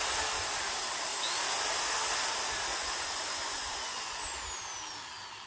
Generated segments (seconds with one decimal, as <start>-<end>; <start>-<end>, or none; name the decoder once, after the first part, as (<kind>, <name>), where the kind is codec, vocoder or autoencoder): 2.7-4.4 (vocoder, Vocos)